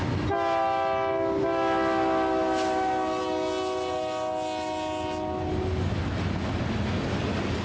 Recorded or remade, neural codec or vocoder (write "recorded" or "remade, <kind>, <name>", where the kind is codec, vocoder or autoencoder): recorded